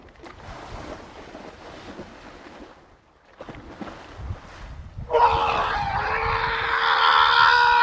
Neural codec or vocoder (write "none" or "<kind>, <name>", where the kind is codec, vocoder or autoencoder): none